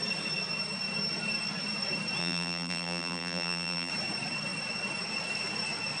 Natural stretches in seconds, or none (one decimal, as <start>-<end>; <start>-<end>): 0.0-2.2; 3.9-6.0